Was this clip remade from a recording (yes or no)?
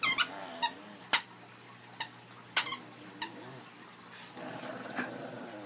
no